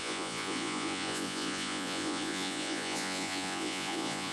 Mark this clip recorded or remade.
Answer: remade